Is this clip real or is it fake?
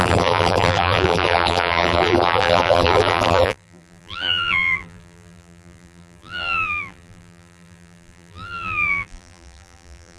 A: fake